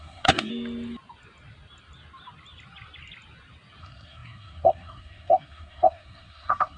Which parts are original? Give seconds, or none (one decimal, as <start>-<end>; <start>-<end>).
0.5-3.8